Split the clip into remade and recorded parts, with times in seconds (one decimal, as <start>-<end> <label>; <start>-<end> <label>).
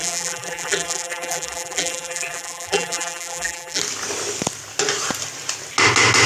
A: 0.0-3.8 remade; 3.8-6.3 recorded